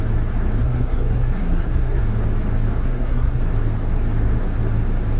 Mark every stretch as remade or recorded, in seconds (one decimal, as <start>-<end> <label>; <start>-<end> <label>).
0.0-0.6 recorded; 0.6-2.0 remade; 2.0-2.8 recorded; 2.8-3.4 remade; 3.4-5.2 recorded

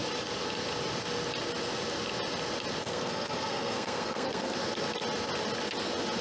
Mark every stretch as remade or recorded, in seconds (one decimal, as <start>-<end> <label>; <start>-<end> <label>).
0.0-2.8 recorded; 2.8-4.5 remade; 4.5-6.2 recorded

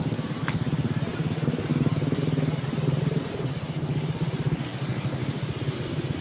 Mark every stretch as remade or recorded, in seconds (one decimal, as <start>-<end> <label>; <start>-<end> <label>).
0.0-6.2 recorded

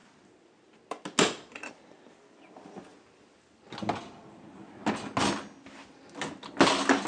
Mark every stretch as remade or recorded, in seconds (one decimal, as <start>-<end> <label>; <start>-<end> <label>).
0.0-7.1 recorded

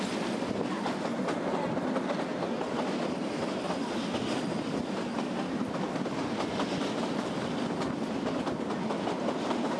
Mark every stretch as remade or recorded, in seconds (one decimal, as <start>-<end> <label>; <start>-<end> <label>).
0.0-9.8 recorded

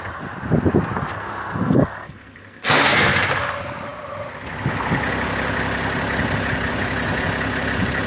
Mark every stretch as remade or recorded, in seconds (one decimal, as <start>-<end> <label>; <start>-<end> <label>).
0.0-1.1 recorded; 1.1-3.1 remade; 3.1-8.1 recorded